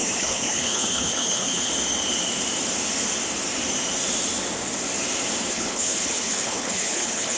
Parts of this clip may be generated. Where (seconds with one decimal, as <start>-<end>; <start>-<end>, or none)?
0.0-1.7; 5.5-7.4